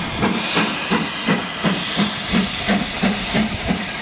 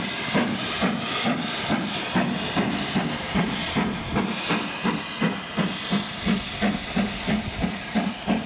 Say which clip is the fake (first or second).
first